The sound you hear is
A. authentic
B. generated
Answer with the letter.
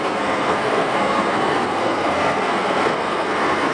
B